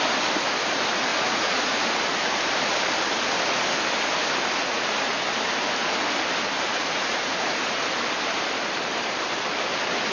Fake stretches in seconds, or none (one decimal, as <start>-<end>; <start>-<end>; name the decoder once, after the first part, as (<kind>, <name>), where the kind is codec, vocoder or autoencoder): 1.1-1.8 (vocoder, Vocos); 4.6-5.2; 6.7-7.8